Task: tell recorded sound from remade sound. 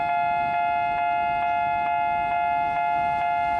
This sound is recorded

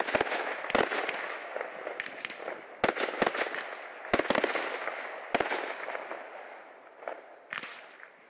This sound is recorded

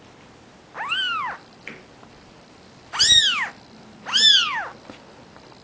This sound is recorded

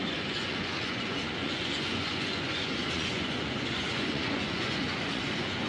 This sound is remade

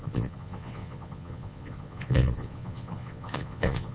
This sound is remade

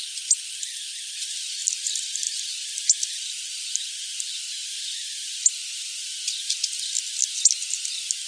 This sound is recorded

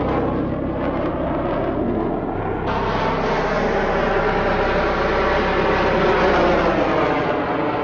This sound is recorded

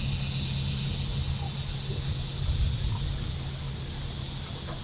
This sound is recorded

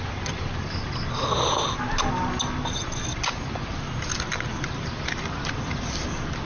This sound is recorded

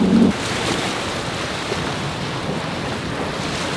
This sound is recorded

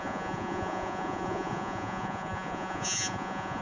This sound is remade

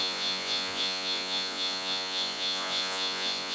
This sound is remade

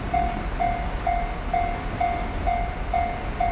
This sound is recorded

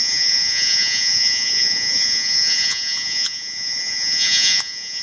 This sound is remade